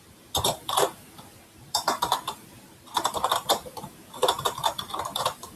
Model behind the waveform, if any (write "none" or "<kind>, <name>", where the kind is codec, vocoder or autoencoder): vocoder, BigVGAN v2